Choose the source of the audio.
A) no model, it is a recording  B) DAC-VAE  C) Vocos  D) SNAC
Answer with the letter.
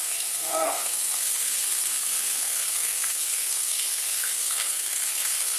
D